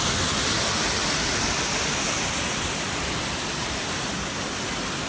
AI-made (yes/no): no